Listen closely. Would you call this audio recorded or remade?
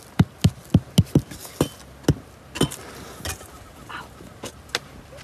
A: recorded